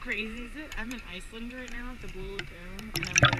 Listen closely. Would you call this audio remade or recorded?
remade